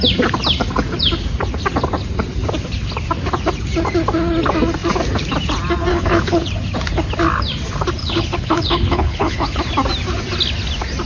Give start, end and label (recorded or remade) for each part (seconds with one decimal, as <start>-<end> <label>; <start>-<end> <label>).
0.0-5.9 recorded; 5.9-6.5 remade; 6.5-8.0 recorded; 8.0-9.6 remade; 9.6-11.1 recorded

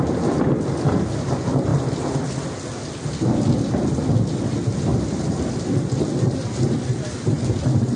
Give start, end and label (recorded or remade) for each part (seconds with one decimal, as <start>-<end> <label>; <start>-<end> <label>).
0.0-8.0 recorded

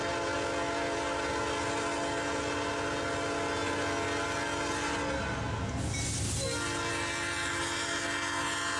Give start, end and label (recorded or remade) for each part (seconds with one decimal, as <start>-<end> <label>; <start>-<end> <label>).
0.0-8.8 recorded

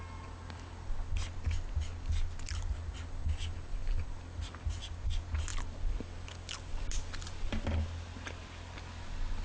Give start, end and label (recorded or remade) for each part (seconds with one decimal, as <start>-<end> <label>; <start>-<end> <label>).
0.0-9.4 recorded

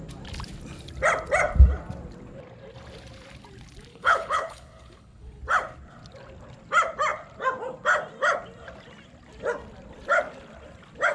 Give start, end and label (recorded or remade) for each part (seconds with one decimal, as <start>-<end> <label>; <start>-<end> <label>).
0.0-3.9 recorded; 3.9-5.4 remade; 5.4-11.1 recorded

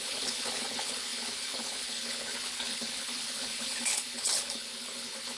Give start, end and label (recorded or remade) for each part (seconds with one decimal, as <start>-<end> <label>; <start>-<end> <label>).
0.0-5.4 remade

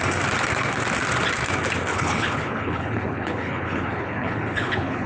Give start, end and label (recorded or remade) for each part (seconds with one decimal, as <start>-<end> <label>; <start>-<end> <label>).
0.0-1.9 recorded; 1.9-5.1 remade

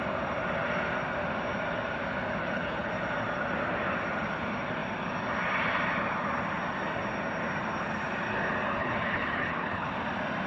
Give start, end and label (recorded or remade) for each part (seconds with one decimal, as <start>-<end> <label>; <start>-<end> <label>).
0.0-2.4 recorded; 2.4-2.9 remade; 2.9-8.8 recorded; 8.8-9.9 remade; 9.9-10.5 recorded